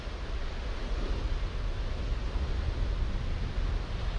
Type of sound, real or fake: real